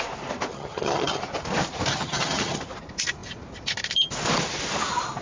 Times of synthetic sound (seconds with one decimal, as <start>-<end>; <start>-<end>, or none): 0.5-1.2; 1.9-2.6